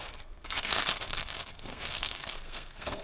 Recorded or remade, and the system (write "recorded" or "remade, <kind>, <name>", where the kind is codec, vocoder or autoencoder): remade, codec, SNAC